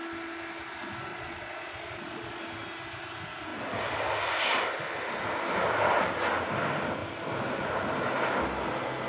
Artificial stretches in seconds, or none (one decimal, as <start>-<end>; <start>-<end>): 1.1-2.4